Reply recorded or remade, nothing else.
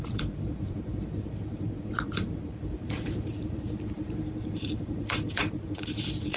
remade